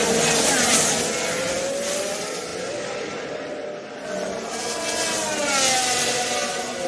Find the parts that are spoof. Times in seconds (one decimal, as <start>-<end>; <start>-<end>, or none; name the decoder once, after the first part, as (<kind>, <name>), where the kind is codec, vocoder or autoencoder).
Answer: none